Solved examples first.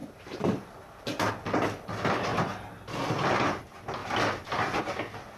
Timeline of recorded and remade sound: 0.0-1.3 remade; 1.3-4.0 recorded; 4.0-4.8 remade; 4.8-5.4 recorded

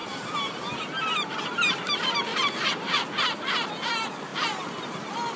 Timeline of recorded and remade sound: 0.0-0.8 remade; 0.8-2.3 recorded; 2.3-3.7 remade; 3.7-5.4 recorded

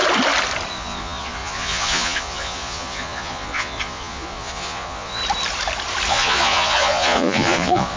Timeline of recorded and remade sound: 0.0-0.7 recorded; 0.7-5.2 remade; 5.2-6.1 recorded; 6.1-8.0 remade